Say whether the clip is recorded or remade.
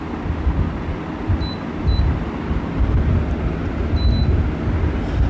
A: recorded